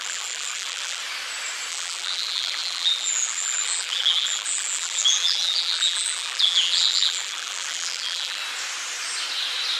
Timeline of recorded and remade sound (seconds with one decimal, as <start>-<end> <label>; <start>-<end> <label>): 0.0-1.0 remade; 1.0-1.7 recorded; 1.7-8.4 remade; 8.4-9.8 recorded